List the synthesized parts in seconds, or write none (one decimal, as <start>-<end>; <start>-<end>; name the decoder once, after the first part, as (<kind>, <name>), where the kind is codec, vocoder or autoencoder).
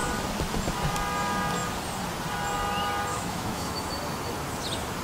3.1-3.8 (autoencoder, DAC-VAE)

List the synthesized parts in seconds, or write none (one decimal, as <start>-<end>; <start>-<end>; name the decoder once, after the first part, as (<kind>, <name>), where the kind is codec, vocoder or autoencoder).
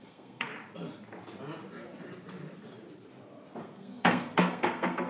0.0-0.5 (codec, SNAC); 3.6-5.1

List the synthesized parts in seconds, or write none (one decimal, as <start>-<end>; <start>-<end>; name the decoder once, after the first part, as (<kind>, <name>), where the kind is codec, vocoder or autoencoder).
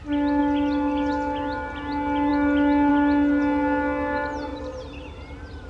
4.5-5.7 (vocoder, BigVGAN v2)